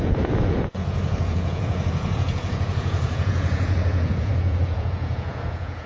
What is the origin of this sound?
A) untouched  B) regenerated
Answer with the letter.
B